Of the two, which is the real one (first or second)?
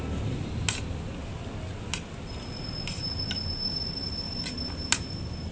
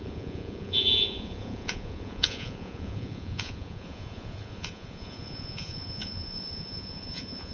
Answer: first